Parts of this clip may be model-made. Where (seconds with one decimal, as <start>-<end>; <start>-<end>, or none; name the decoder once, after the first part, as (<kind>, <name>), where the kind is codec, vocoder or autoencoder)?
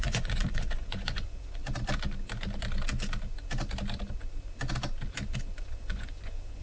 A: 0.0-1.6 (vocoder, Vocos); 5.6-6.6